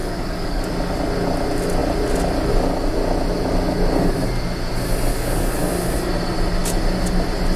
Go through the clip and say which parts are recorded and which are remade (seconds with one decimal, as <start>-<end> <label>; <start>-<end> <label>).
0.0-0.6 remade; 0.6-5.1 recorded; 5.1-5.7 remade; 5.7-7.6 recorded